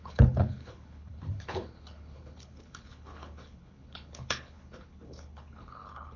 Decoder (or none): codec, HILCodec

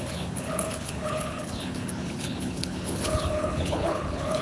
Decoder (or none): codec, HILCodec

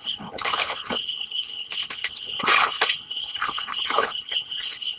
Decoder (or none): codec, HILCodec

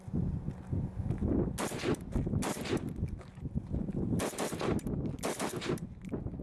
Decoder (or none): none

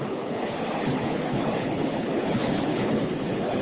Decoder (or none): codec, HILCodec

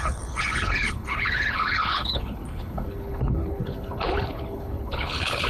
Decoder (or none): codec, HILCodec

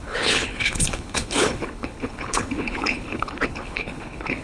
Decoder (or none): codec, HILCodec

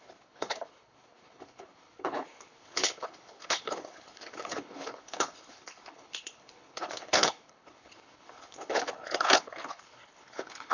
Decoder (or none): codec, HILCodec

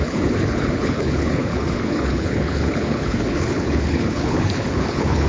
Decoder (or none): codec, HILCodec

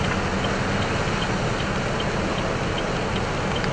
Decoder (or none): none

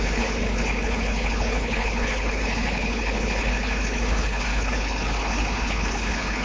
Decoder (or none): codec, HILCodec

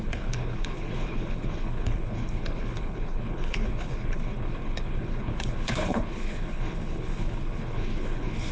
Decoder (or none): codec, HILCodec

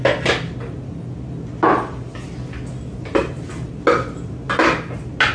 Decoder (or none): none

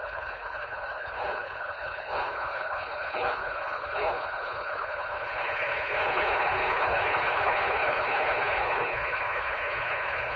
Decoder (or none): codec, HILCodec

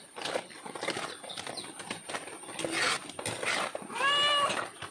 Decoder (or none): none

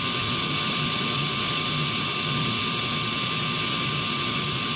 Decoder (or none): none